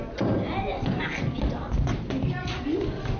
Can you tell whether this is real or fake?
real